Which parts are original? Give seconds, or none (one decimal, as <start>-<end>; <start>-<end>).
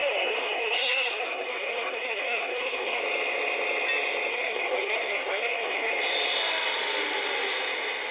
3.0-4.3; 5.9-8.1